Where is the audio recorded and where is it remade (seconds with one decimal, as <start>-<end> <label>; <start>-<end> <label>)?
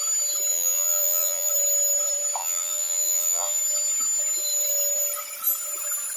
0.0-0.5 recorded; 0.5-1.5 remade; 1.5-2.4 recorded; 2.4-3.6 remade; 3.6-6.2 recorded